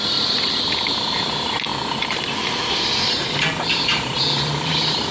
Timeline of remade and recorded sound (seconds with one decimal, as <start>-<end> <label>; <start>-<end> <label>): 0.0-5.1 remade